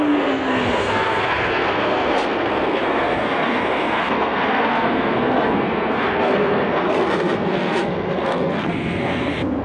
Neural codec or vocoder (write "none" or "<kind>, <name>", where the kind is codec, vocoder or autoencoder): codec, SNAC